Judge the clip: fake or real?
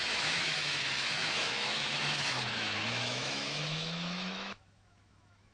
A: fake